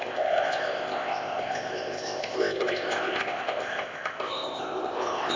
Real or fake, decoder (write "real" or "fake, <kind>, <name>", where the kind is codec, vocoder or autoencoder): fake, codec, ZipCodec